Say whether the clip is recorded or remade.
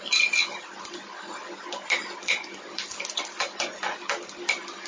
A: recorded